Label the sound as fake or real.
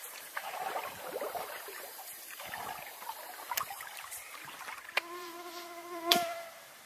fake